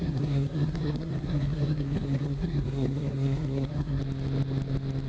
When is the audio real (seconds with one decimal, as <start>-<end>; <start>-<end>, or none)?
4.0-5.1